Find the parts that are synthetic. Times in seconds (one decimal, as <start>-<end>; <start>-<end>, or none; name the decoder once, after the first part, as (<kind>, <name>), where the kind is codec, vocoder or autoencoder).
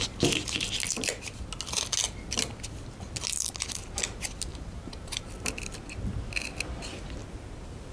4.5-5.3 (vocoder, BigVGAN v2)